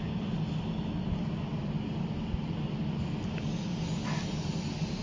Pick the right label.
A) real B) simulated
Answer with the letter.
A